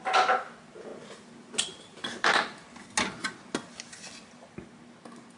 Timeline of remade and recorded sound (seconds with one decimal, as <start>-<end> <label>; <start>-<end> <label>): 0.0-5.4 recorded